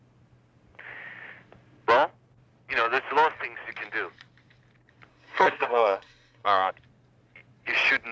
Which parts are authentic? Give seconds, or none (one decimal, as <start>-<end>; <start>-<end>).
0.0-5.1; 6.7-8.1